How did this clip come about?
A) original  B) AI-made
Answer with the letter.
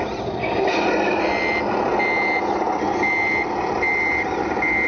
A